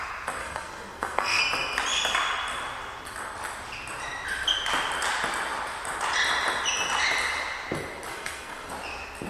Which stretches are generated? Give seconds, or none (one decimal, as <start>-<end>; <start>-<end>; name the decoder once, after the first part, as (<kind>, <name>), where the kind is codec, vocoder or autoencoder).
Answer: 0.4-1.4 (codec, SNAC); 8.1-8.7